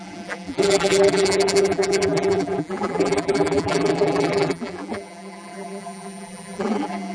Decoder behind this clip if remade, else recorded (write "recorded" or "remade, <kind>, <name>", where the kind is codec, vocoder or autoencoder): remade, vocoder, BigVGAN v2